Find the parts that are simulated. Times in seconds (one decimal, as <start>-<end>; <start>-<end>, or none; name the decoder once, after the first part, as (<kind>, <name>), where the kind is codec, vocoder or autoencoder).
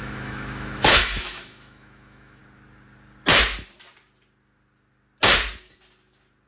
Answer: 0.0-2.4 (autoencoder, DAC-VAE)